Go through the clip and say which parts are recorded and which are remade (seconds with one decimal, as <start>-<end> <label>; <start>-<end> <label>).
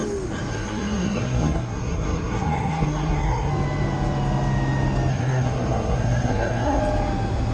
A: 0.0-0.5 recorded; 0.5-3.5 remade; 3.5-5.1 recorded; 5.1-6.8 remade; 6.8-7.5 recorded